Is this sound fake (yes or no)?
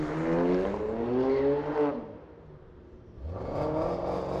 no